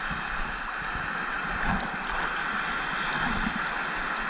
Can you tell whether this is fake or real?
real